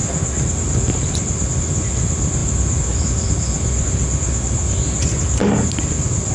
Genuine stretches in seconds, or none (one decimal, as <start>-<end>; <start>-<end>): 0.0-6.3